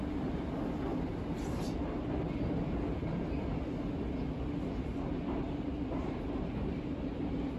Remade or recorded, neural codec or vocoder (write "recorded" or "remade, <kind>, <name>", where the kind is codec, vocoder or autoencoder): recorded